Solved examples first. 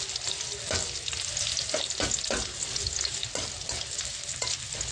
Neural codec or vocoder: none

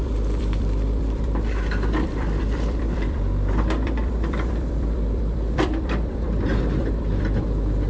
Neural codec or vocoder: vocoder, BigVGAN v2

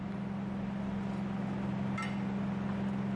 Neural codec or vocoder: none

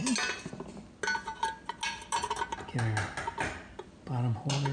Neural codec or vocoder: none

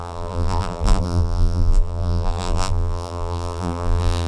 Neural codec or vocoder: vocoder, BigVGAN v2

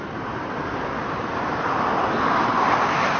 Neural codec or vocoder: vocoder, BigVGAN v2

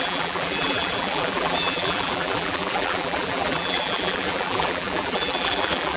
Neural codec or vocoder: vocoder, BigVGAN v2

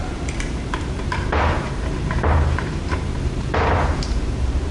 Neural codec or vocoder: vocoder, BigVGAN v2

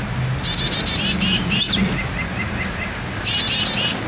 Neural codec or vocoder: none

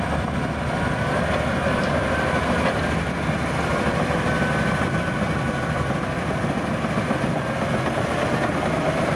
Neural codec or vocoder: none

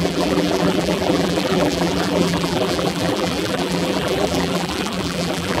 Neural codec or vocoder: vocoder, BigVGAN v2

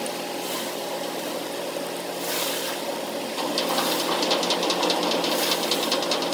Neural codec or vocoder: none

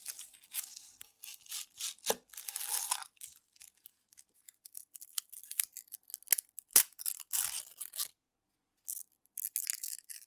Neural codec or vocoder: none